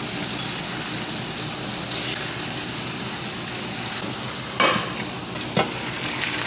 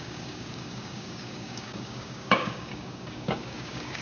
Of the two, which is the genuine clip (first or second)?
first